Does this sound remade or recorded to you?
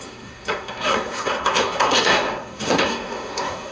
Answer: remade